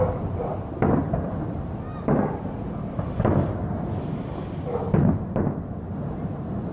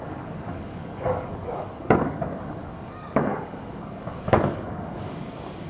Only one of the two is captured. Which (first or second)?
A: first